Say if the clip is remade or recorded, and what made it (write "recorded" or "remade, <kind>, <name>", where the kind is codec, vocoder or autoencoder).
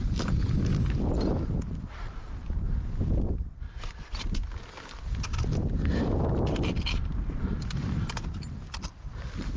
recorded